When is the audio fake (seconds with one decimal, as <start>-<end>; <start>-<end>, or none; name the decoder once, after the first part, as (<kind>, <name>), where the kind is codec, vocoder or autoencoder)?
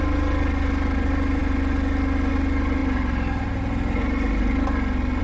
none